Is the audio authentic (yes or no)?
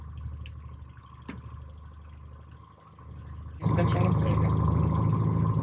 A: yes